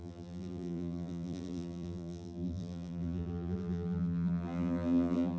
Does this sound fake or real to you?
fake